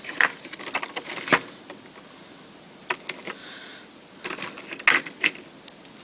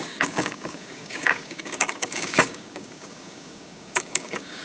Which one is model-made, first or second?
second